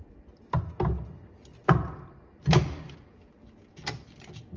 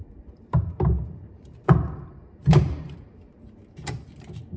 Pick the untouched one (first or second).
first